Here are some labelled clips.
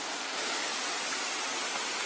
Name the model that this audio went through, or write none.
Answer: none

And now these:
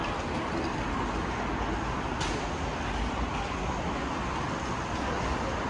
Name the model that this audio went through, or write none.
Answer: none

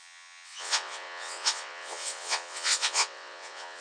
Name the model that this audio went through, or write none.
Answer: vocoder, WaveNeXt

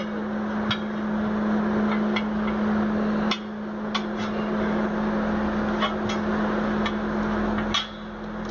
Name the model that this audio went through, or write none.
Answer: none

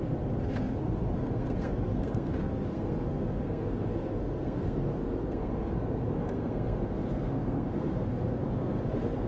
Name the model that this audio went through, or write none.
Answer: codec, SNAC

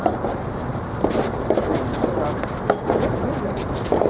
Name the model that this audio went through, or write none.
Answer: none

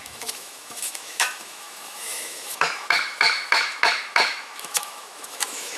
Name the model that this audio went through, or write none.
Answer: autoencoder, DAC-VAE